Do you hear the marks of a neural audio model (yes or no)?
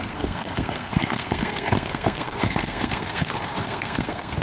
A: yes